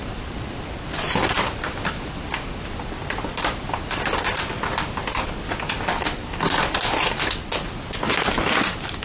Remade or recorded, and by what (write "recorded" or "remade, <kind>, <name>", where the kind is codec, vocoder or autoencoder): recorded